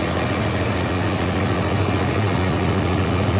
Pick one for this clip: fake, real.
fake